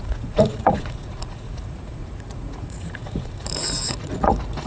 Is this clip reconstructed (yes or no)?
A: yes